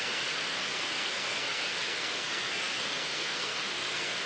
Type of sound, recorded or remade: remade